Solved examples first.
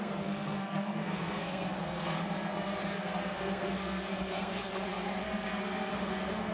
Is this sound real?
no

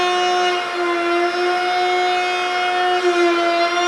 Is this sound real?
yes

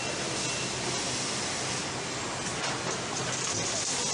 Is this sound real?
yes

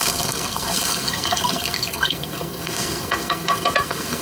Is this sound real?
no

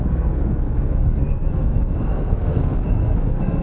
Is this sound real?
no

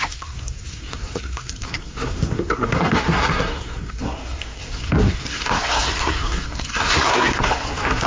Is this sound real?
no